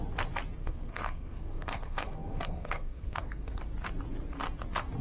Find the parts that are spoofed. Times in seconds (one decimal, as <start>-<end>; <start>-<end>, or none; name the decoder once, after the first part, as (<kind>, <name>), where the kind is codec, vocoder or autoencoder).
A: 0.6-3.6 (codec, SNAC)